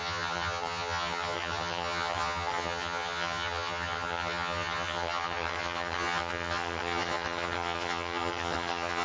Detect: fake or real fake